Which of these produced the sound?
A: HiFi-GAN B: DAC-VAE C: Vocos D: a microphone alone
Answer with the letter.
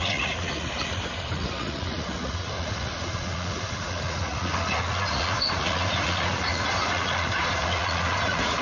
C